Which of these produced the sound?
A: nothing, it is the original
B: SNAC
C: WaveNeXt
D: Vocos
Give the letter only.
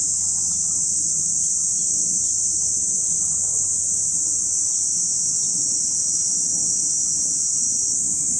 A